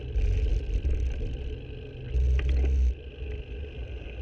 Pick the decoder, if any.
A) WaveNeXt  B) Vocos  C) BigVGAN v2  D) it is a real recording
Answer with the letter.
D